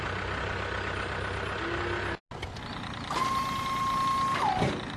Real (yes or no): yes